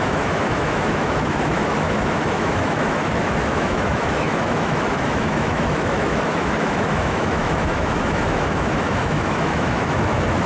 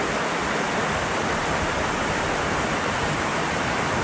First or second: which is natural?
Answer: second